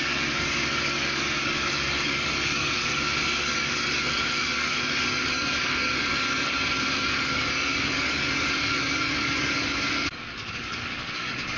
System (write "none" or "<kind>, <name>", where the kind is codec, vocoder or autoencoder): codec, DAC